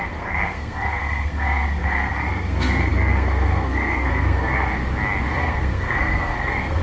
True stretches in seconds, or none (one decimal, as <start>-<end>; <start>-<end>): 4.7-5.3